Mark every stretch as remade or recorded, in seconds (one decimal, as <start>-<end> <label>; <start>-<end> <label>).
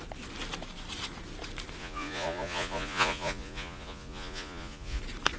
0.0-1.8 recorded; 1.8-5.0 remade; 5.0-5.4 recorded